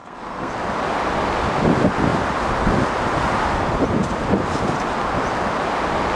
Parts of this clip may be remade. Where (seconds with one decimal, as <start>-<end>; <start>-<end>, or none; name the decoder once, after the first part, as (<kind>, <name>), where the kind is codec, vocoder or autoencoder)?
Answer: 0.0-0.5 (codec, SNAC)